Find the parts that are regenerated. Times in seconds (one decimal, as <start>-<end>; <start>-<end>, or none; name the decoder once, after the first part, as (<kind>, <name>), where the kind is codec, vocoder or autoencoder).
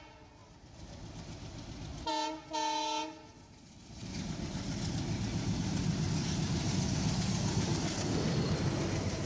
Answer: none